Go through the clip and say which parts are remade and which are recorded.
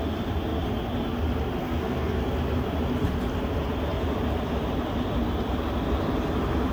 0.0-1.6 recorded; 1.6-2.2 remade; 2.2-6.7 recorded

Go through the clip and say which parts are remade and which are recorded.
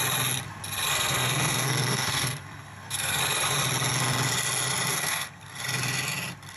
0.0-0.9 recorded; 0.9-3.2 remade; 3.2-4.9 recorded; 4.9-5.6 remade; 5.6-6.6 recorded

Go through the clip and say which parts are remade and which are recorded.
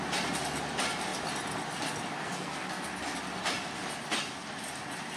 0.0-2.2 recorded; 2.2-2.9 remade; 2.9-5.2 recorded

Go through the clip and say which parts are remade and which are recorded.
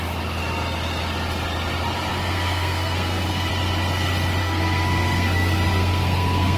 0.0-2.1 recorded; 2.1-3.5 remade; 3.5-4.4 recorded; 4.4-6.6 remade